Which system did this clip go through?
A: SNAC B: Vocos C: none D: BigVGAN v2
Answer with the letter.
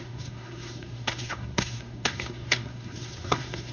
A